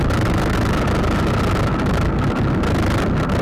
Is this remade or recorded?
recorded